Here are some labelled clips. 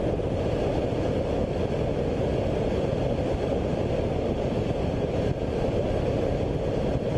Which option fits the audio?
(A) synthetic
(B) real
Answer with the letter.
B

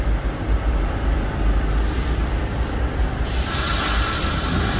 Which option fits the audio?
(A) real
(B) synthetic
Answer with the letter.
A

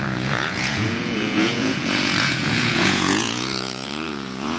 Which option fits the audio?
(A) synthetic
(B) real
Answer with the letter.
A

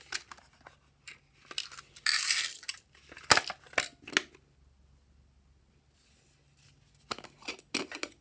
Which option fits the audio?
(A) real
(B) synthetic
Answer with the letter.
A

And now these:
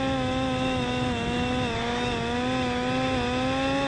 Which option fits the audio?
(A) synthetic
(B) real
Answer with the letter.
B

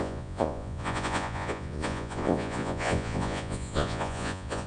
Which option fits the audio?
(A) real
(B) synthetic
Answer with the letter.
B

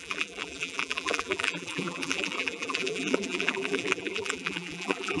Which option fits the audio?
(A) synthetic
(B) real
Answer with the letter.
A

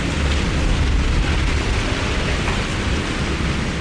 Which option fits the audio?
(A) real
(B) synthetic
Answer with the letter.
A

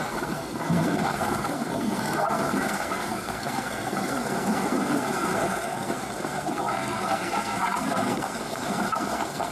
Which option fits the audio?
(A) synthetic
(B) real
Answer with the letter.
A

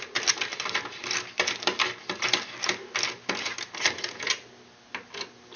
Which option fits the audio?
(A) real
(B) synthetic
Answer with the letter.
A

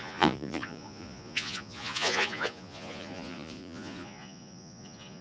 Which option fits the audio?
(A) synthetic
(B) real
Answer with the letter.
A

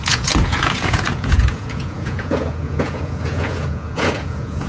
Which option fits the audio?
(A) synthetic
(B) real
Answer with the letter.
A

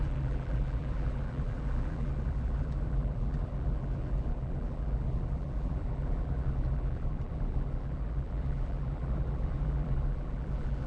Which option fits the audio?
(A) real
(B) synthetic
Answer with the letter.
B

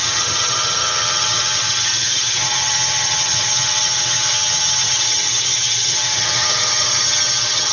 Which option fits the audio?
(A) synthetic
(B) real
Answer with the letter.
A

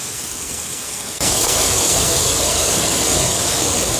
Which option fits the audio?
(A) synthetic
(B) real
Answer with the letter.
A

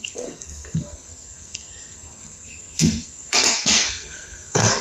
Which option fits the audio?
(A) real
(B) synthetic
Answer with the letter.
B